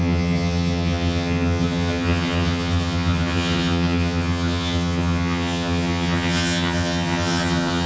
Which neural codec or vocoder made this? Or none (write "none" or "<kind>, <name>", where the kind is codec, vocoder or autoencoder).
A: vocoder, HiFi-GAN